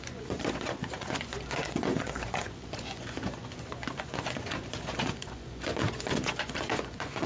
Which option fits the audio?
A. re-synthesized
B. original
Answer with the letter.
A